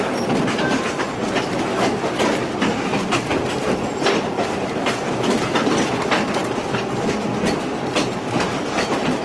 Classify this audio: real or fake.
real